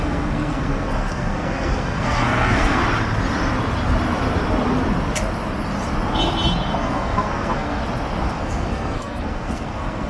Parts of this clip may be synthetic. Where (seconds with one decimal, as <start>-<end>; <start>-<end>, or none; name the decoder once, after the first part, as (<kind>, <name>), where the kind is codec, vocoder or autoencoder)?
0.0-2.8 (codec, SNAC); 6.8-7.8; 8.3-10.1